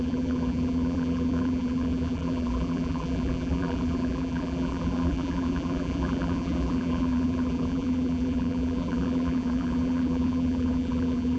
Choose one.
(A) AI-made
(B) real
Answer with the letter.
A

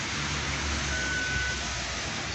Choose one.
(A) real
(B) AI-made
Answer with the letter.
A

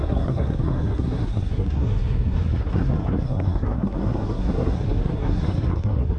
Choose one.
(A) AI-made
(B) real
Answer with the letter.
A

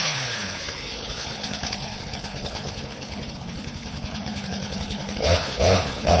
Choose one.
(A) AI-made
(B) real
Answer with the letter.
A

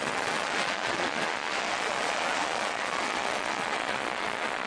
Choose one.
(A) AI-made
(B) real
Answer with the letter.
A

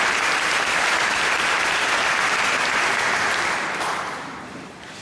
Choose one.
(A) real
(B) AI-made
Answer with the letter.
B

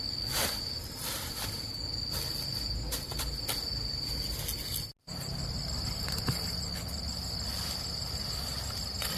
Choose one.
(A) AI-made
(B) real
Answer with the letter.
B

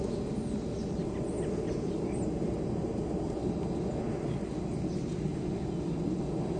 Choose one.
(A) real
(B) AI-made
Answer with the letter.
A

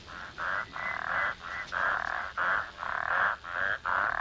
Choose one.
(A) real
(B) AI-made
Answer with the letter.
A